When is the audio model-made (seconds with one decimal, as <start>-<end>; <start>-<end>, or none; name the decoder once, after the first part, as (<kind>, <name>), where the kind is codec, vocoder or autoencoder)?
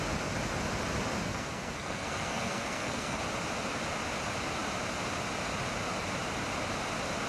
1.3-3.2 (codec, SNAC)